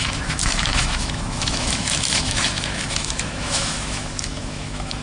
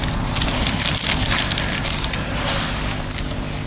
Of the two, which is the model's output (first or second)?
first